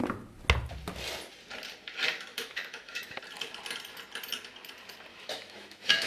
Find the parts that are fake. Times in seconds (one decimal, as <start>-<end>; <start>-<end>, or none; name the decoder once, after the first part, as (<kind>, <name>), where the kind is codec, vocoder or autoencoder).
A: 2.3-3.2 (autoencoder, DAC-VAE); 5.1-6.1